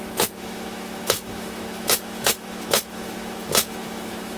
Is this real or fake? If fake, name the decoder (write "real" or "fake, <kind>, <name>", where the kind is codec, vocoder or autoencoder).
fake, autoencoder, DAC-VAE